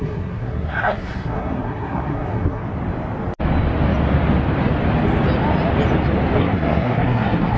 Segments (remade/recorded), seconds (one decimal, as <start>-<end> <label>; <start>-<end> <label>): 0.0-2.6 remade; 2.6-6.4 recorded; 6.4-7.6 remade